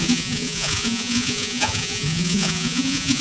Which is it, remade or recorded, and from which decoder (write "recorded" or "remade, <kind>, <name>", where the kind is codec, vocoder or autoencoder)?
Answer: remade, vocoder, Vocos